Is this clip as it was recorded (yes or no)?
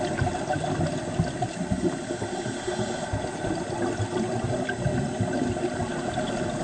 yes